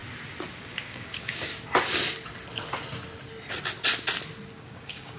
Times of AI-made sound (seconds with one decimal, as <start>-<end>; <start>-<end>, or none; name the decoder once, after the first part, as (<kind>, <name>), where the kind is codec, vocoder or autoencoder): 0.6-1.5 (codec, DAC); 4.6-5.2